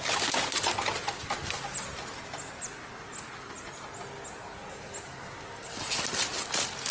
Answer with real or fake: real